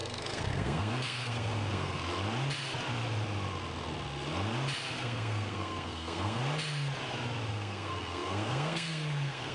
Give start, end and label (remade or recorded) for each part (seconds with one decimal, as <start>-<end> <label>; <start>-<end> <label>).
0.0-2.0 remade; 2.0-4.9 recorded; 4.9-6.4 remade; 6.4-7.5 recorded; 7.5-9.5 remade